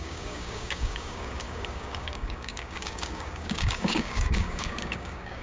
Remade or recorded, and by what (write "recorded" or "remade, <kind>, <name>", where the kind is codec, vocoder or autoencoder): remade, codec, DAC